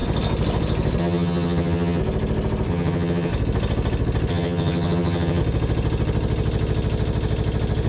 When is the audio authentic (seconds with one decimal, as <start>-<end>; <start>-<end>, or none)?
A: 0.0-1.0; 2.0-2.7; 3.3-4.3; 5.4-7.9